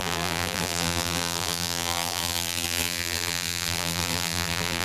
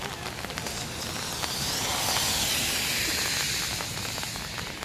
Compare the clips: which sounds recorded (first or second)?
second